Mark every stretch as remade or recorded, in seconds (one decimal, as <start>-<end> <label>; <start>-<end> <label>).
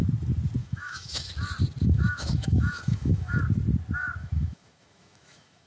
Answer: 0.0-0.6 recorded; 0.6-1.3 remade; 1.3-1.8 recorded; 1.8-3.4 remade; 3.4-4.2 recorded; 4.2-5.7 remade